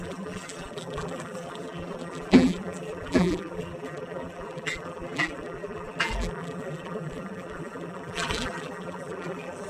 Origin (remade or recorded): remade